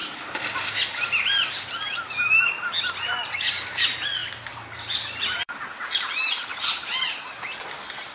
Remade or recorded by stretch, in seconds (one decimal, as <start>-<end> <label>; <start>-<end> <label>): 0.0-2.8 recorded; 2.8-4.2 remade; 4.2-5.4 recorded; 5.4-8.1 remade